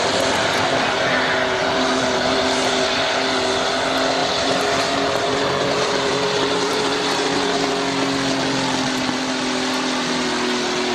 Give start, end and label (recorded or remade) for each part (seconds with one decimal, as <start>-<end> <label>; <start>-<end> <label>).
0.0-1.6 recorded; 1.6-3.1 remade; 3.1-4.2 recorded; 4.2-7.7 remade; 7.7-10.9 recorded